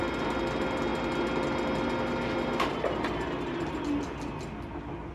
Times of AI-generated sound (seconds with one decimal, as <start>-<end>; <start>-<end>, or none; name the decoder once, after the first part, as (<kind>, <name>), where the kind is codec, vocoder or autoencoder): none